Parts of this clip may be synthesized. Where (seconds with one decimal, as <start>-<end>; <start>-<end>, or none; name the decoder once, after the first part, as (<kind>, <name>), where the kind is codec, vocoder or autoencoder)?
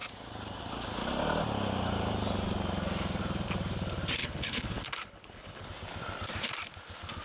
4.2-5.7 (codec, HILCodec)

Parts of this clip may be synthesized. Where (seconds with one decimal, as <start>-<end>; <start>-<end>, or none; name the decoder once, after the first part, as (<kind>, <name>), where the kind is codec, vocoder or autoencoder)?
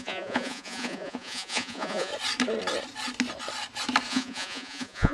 0.0-2.1 (vocoder, Vocos); 4.1-5.1